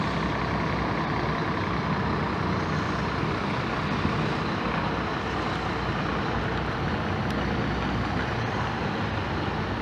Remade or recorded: recorded